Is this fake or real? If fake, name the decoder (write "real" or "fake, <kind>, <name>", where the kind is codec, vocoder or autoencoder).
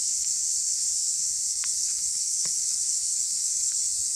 fake, codec, SNAC